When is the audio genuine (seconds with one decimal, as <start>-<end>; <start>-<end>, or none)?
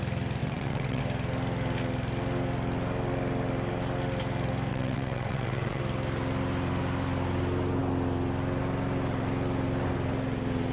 0.0-0.4; 1.0-4.7; 5.8-10.7